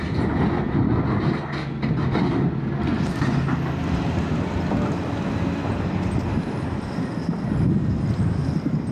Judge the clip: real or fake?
real